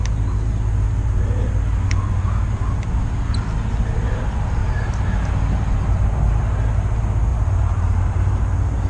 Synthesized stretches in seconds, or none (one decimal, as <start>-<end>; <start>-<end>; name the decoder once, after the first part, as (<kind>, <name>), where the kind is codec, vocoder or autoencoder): 4.6-5.2 (vocoder, BigVGAN v2); 7.3-8.9